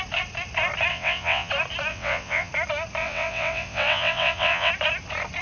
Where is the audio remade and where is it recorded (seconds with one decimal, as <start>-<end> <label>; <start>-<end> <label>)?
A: 0.0-0.9 recorded; 0.9-1.5 remade; 1.5-1.9 recorded; 1.9-2.5 remade; 2.5-3.0 recorded; 3.0-4.7 remade; 4.7-5.4 recorded